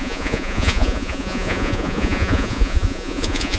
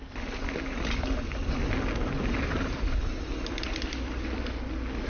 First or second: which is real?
second